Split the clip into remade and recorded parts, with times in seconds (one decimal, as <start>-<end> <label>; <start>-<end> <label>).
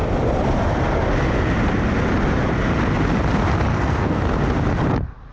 0.0-3.7 recorded; 3.7-4.2 remade; 4.2-5.3 recorded